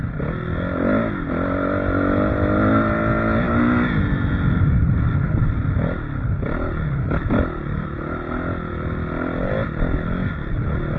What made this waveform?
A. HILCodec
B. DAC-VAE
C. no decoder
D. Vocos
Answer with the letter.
C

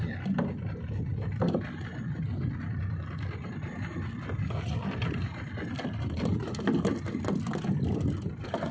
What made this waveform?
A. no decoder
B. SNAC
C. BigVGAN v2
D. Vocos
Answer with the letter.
A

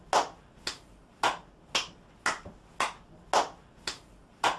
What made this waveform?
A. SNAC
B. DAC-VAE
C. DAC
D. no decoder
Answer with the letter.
D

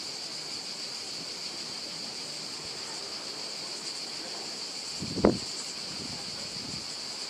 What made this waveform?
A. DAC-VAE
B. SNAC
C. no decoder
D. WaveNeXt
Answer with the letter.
C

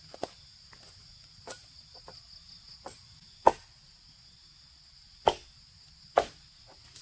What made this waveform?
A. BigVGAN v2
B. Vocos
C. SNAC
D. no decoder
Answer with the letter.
D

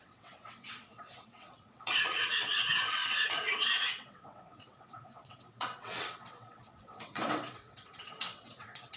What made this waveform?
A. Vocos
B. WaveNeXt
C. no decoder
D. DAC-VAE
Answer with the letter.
B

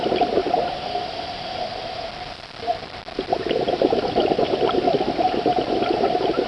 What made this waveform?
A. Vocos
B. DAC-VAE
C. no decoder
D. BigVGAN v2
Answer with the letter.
C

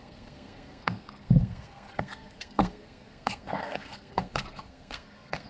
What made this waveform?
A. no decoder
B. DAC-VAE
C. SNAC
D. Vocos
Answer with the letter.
C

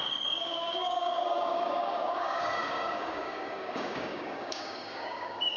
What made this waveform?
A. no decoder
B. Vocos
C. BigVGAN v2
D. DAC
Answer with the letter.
D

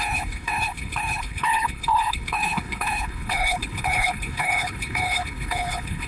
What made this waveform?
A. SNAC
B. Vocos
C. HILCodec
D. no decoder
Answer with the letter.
C